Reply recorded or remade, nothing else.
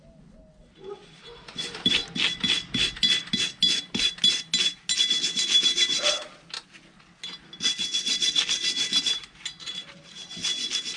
recorded